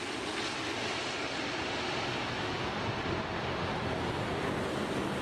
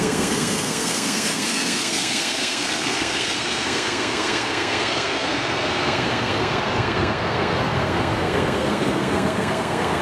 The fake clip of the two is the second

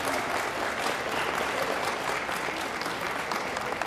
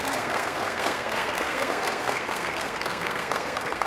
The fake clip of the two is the second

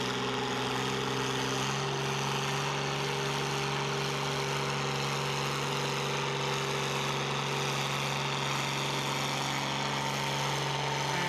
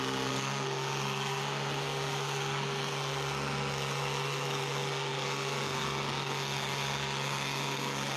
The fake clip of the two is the second